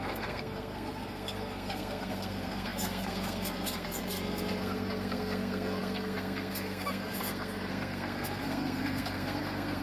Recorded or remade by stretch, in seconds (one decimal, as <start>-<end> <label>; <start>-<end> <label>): 0.0-9.8 remade